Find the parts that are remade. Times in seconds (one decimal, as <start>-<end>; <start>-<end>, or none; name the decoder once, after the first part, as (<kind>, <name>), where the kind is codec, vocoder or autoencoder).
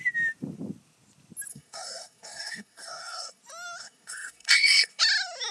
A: 1.5-3.4 (codec, SNAC); 3.8-5.0